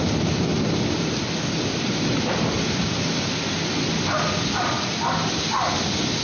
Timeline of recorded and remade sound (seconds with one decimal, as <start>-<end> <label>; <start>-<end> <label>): 0.0-6.2 recorded